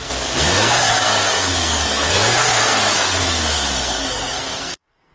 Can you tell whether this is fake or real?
fake